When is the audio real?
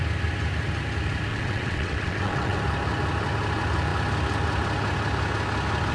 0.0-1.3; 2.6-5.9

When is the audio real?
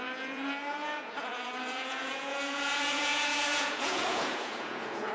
none